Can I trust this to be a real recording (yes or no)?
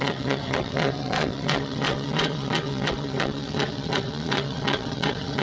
no